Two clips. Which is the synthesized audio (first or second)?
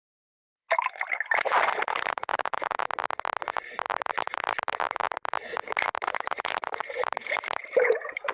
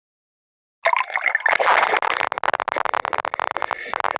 first